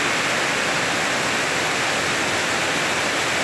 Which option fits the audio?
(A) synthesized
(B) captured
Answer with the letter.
B